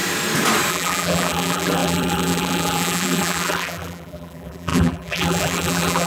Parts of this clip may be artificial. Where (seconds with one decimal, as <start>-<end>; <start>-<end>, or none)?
0.7-6.1